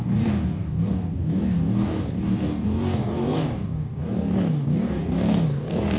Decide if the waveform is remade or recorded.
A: remade